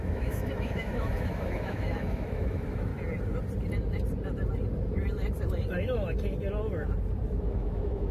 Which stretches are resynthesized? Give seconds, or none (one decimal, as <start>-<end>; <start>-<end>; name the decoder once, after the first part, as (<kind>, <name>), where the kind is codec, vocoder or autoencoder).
0.0-2.9 (autoencoder, DAC-VAE); 7.3-8.1